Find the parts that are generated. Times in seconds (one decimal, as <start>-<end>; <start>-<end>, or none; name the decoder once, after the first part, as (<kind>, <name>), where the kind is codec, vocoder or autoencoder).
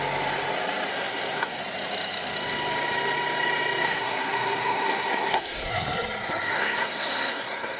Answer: 0.9-1.6 (codec, SNAC); 3.8-7.8